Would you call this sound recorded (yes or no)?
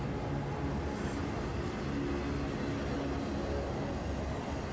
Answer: yes